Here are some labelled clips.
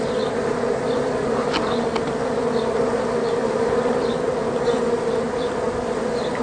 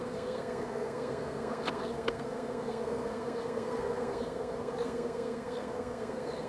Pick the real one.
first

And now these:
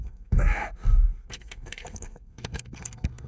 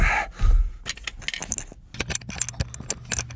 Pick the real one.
second